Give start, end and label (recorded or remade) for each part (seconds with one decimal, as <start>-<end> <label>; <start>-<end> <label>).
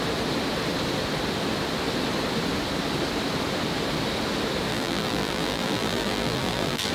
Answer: 0.0-4.7 recorded; 4.7-6.9 remade